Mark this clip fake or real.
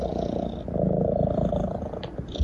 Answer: real